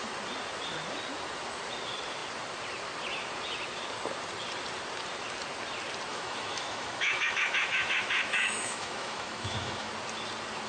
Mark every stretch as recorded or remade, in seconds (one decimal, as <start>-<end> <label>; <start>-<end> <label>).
0.0-6.1 recorded; 6.1-9.9 remade; 9.9-10.7 recorded